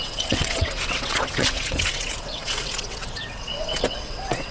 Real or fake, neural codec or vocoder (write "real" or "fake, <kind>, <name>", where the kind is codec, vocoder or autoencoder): fake, vocoder, WaveNeXt